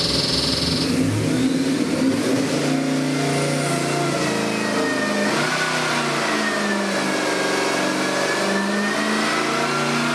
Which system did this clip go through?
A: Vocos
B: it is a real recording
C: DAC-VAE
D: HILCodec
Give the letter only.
B